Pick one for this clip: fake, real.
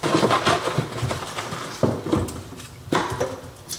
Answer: real